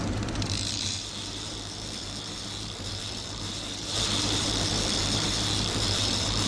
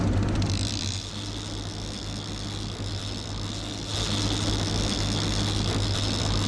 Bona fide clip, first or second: second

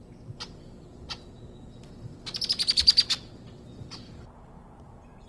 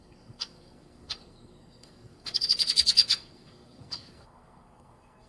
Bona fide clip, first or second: first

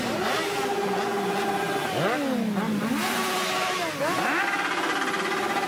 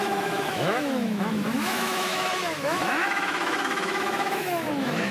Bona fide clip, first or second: first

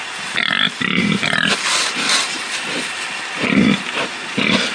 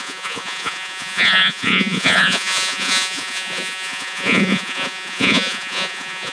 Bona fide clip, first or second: first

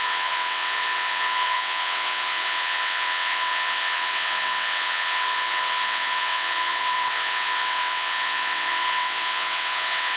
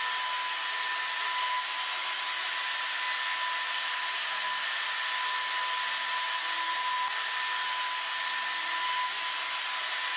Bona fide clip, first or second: second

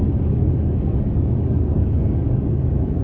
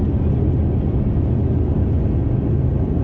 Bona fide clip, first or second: second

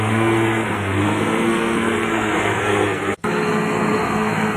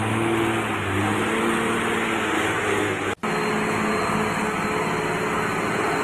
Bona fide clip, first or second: second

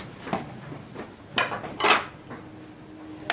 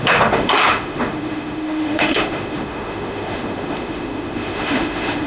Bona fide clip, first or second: first